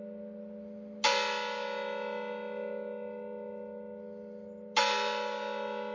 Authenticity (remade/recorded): recorded